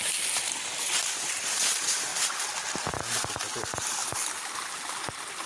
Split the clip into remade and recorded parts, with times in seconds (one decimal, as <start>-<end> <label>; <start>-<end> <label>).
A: 0.0-5.5 recorded